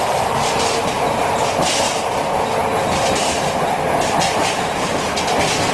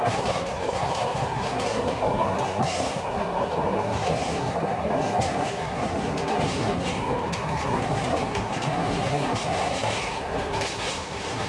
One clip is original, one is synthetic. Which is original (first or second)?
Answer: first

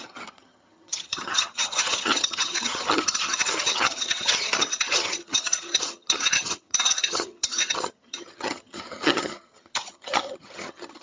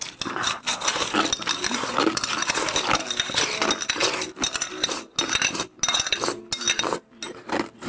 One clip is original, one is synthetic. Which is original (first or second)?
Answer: second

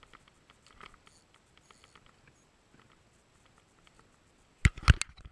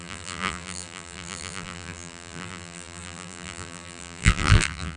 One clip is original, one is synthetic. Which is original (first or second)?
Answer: first